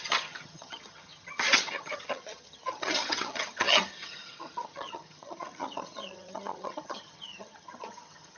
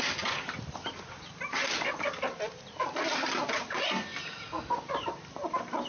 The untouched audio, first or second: second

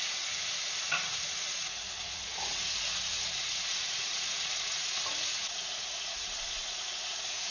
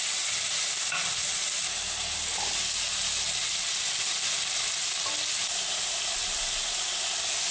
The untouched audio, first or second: second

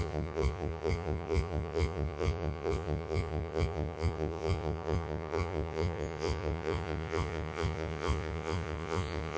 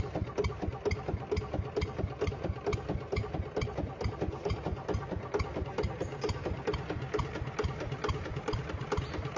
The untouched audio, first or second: second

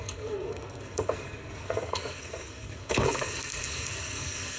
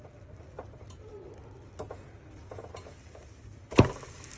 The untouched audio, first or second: second